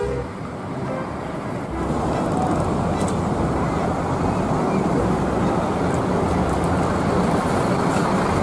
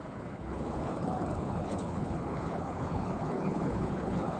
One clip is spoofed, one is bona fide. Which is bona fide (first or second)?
first